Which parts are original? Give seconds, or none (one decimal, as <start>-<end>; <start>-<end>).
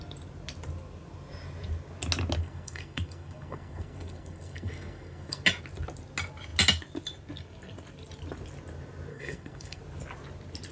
0.0-2.4; 5.4-9.1; 9.8-10.7